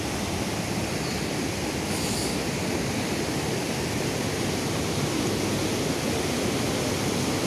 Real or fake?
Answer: real